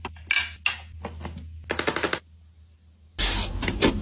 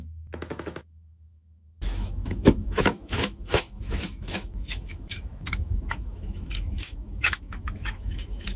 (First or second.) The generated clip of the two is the second